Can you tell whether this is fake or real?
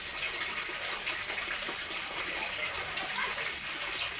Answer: real